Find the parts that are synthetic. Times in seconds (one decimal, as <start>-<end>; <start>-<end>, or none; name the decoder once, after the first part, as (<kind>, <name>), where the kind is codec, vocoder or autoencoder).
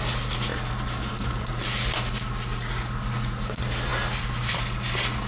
none